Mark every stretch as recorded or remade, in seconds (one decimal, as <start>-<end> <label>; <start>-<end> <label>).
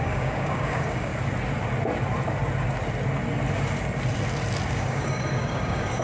0.0-1.1 remade; 1.1-4.7 recorded; 4.7-6.0 remade